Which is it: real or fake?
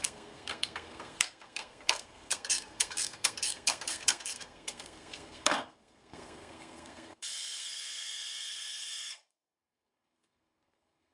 fake